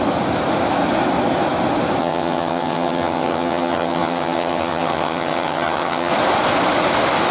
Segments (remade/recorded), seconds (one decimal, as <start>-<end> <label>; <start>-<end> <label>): 0.0-2.0 recorded; 2.0-6.1 remade; 6.1-7.3 recorded